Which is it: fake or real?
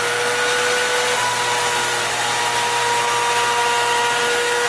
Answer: real